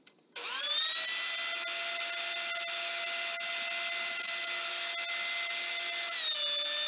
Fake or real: real